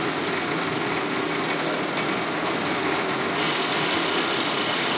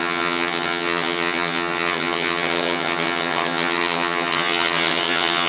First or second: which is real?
first